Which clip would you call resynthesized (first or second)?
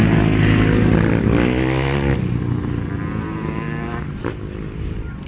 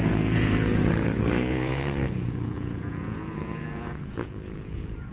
second